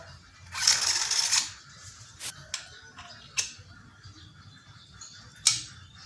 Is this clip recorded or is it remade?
recorded